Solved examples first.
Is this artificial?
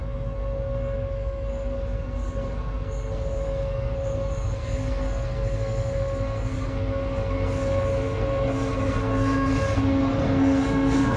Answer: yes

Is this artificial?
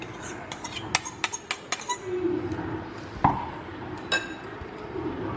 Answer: no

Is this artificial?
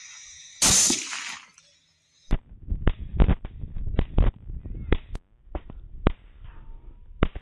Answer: no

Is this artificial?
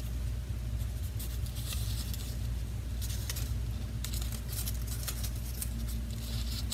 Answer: no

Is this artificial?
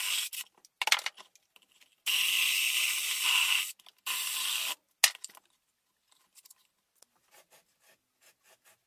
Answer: no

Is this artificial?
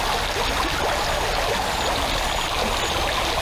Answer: no